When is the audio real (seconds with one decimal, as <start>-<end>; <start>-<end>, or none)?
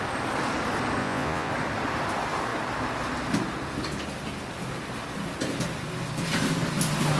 0.0-1.0; 1.5-7.2